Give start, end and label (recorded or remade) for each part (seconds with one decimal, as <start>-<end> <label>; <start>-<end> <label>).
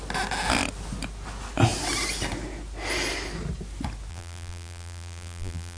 0.0-4.1 recorded; 4.1-5.8 remade